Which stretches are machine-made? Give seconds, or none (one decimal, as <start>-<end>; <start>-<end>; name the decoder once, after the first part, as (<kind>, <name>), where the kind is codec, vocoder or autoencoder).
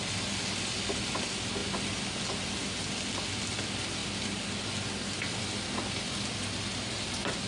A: none